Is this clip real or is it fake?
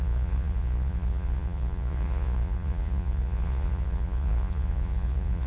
fake